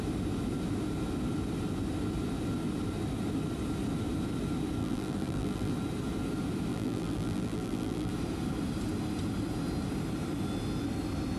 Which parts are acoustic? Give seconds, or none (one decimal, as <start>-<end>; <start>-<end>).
0.0-4.8; 5.7-6.7; 8.1-11.4